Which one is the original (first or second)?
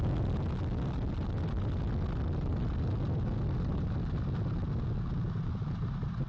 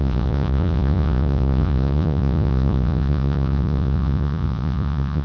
first